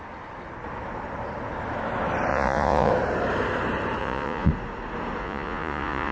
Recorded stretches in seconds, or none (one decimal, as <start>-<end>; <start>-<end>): 0.0-2.3; 2.9-4.0; 4.5-5.2